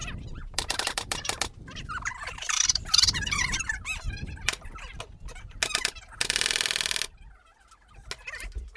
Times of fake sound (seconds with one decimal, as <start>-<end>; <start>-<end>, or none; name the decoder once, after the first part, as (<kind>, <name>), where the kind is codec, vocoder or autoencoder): 0.0-4.1 (vocoder, BigVGAN v2)